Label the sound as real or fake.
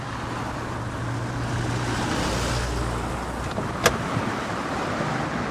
real